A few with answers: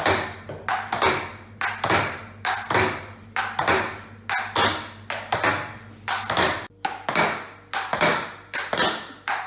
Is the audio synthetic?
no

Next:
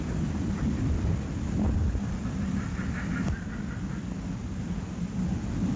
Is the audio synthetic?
no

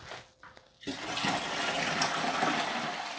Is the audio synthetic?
no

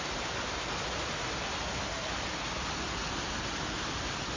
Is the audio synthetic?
no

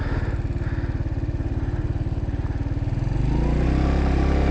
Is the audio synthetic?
no